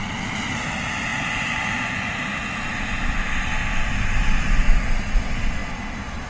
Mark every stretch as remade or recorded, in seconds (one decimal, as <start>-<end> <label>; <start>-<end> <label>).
0.0-1.1 recorded; 1.1-2.1 remade; 2.1-6.3 recorded